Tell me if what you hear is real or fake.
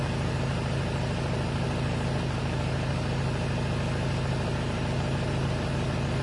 real